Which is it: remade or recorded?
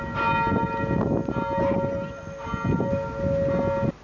recorded